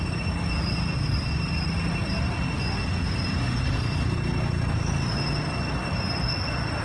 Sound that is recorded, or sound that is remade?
recorded